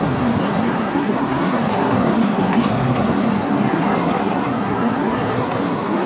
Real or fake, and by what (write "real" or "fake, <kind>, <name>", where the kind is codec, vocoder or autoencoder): fake, codec, SNAC